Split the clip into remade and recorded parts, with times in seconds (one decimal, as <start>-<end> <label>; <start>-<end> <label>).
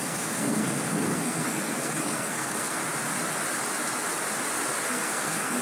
0.0-2.8 remade; 2.8-4.9 recorded; 4.9-5.6 remade